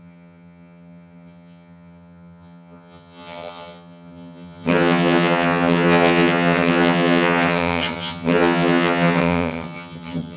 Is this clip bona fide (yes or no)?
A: no